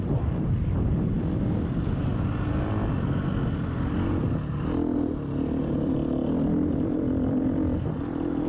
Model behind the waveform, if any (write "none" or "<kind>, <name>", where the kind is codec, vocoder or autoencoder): none